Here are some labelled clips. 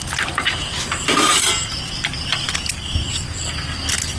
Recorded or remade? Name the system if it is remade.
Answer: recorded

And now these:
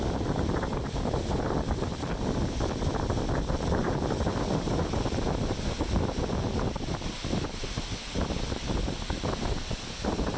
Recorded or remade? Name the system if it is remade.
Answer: remade, vocoder, BigVGAN v2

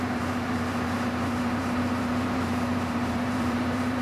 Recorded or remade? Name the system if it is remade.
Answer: remade, vocoder, BigVGAN v2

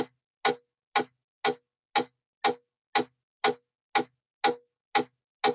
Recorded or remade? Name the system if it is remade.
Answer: recorded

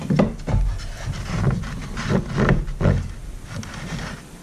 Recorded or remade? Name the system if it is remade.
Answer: recorded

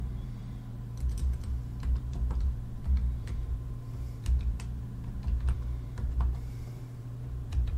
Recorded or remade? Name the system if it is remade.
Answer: remade, vocoder, BigVGAN v2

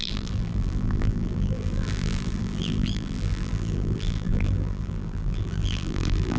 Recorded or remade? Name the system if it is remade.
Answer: remade, vocoder, BigVGAN v2